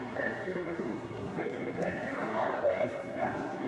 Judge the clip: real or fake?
fake